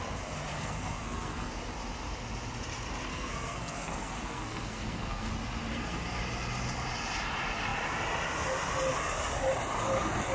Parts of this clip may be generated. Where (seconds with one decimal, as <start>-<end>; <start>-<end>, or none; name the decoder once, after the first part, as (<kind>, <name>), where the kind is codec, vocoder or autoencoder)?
0.5-1.5 (codec, SNAC); 3.1-5.3; 5.7-6.2